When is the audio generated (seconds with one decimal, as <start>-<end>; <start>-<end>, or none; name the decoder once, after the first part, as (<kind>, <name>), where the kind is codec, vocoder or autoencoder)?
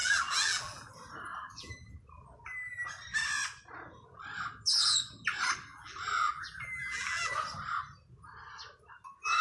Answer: 0.0-0.9 (vocoder, BigVGAN v2); 1.3-1.9; 5.7-7.3